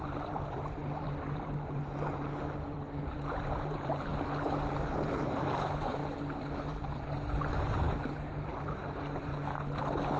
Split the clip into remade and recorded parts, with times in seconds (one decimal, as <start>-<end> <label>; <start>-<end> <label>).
0.0-4.1 remade; 4.1-4.7 recorded; 4.7-6.0 remade; 6.0-6.7 recorded; 6.7-9.3 remade; 9.3-10.2 recorded